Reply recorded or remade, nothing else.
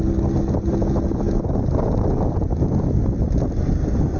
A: recorded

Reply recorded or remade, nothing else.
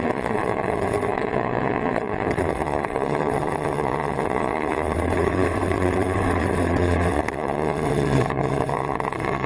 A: remade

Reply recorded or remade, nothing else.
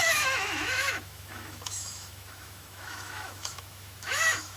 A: remade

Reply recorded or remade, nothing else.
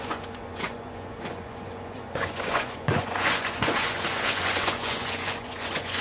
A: remade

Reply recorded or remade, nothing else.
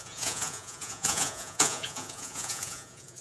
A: remade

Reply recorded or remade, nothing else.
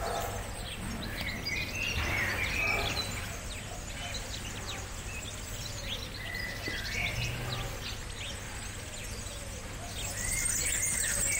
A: recorded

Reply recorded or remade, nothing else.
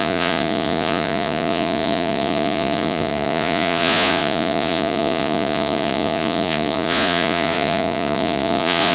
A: remade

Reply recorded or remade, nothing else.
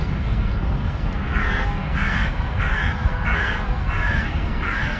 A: remade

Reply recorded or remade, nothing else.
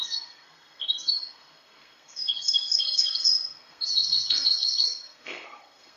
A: remade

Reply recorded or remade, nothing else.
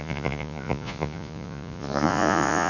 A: remade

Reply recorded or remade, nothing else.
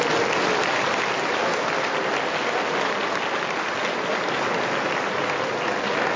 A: recorded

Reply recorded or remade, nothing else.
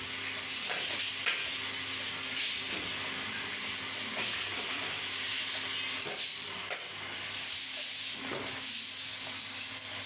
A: recorded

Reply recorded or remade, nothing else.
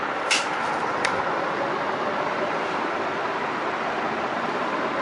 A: remade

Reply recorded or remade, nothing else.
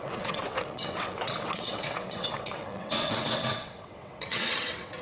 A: remade